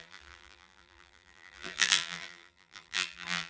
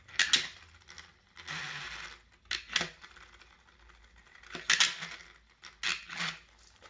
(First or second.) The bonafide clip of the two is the second